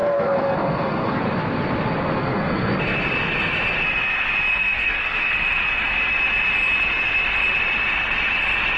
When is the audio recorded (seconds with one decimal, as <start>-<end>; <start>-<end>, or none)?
1.2-2.2; 2.7-4.5; 5.3-8.8